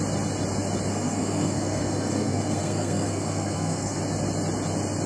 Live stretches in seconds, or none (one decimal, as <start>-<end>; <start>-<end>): 0.0-0.9; 4.0-5.1